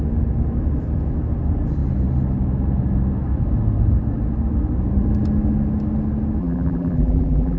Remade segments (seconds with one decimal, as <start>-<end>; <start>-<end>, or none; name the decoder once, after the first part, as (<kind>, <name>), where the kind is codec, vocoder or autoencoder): 6.4-7.6 (vocoder, BigVGAN v2)